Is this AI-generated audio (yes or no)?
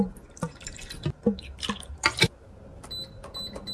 no